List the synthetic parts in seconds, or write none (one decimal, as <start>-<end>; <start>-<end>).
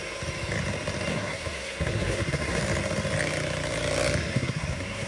1.1-2.6; 4.2-5.1